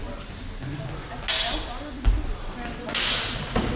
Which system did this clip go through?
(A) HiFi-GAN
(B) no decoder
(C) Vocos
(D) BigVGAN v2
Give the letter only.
B